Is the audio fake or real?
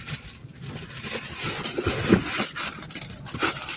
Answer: real